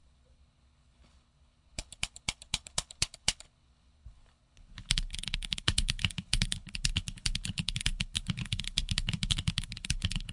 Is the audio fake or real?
fake